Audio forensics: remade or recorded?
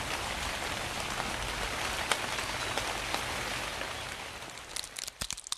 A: recorded